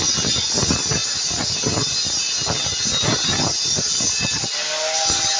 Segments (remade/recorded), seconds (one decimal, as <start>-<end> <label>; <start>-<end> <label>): 0.0-5.4 recorded